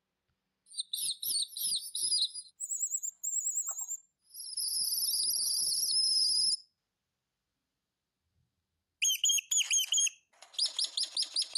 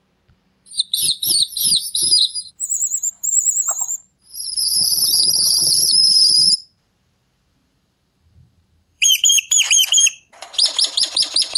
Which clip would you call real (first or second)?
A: first